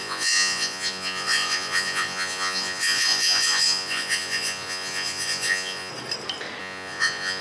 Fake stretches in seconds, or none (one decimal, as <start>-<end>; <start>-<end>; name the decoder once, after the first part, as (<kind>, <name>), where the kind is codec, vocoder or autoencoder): 0.0-5.9 (vocoder, Vocos); 6.6-7.4